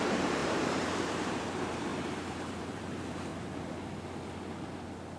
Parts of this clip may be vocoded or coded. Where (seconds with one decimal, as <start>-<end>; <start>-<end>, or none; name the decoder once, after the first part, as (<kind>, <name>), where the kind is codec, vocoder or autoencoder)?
0.0-3.3 (vocoder, BigVGAN v2)